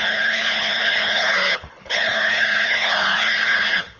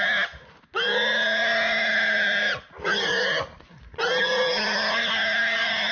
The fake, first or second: first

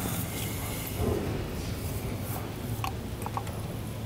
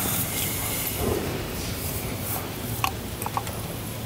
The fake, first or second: second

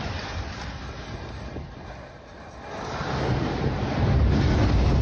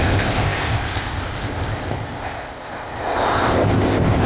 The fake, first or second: second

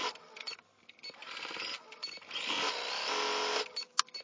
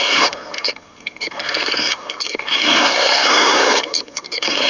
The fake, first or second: second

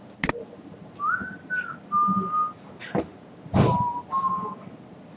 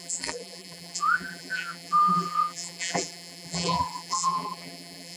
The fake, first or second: second